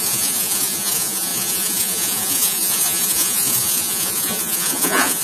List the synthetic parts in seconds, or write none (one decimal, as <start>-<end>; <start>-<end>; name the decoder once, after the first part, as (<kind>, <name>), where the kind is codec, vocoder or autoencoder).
0.0-5.2 (vocoder, Vocos)